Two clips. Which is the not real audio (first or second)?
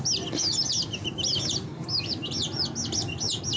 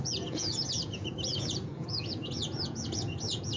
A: second